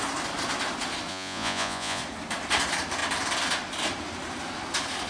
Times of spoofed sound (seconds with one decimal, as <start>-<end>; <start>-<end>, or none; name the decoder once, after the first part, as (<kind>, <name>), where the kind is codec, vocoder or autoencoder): 1.1-2.0 (vocoder, Vocos)